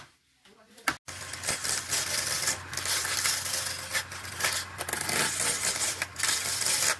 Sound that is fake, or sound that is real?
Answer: real